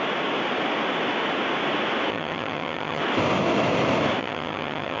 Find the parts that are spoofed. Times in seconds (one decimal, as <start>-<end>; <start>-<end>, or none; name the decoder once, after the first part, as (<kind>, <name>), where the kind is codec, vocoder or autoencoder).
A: 2.1-3.0 (vocoder, HiFi-GAN); 4.2-5.0